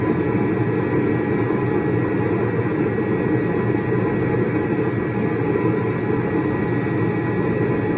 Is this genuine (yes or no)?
yes